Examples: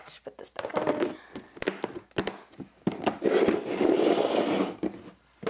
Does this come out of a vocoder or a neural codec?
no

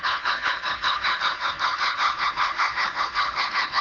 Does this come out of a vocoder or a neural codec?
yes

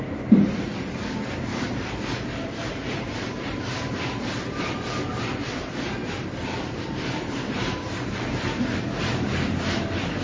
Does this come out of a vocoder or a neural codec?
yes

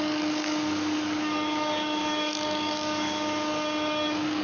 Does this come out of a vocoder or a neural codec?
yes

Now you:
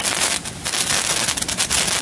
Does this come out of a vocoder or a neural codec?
no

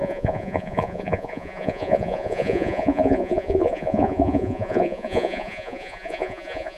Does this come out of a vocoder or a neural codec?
yes